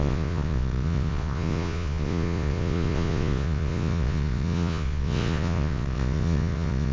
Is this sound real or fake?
fake